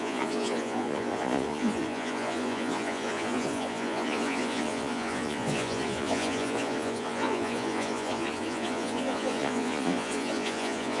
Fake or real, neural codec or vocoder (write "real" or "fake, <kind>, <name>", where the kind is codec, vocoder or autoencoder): fake, vocoder, Vocos